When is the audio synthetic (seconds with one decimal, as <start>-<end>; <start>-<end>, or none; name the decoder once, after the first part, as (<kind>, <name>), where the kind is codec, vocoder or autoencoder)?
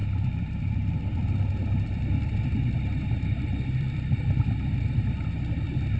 0.0-0.9 (vocoder, BigVGAN v2); 1.6-5.1